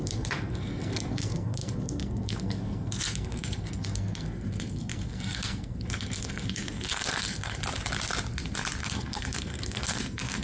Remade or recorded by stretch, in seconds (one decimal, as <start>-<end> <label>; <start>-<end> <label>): 0.0-7.6 remade; 7.6-8.8 recorded; 8.8-10.4 remade